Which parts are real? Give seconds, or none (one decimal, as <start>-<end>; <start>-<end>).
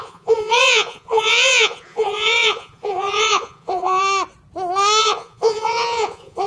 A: 4.0-5.0